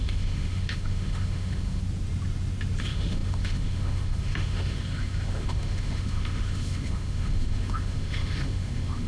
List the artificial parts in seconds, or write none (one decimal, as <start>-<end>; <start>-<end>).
0.0-1.8; 2.8-9.1